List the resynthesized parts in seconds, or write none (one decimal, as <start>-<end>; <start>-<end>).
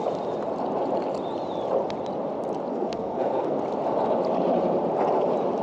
2.7-3.6